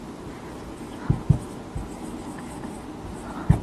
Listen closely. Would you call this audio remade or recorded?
recorded